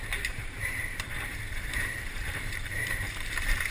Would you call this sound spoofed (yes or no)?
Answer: yes